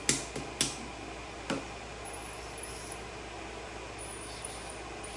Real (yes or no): yes